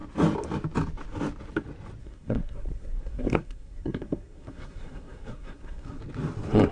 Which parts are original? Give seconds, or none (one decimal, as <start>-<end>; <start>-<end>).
0.0-2.0; 6.0-6.7